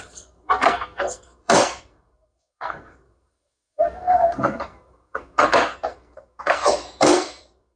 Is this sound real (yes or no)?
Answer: no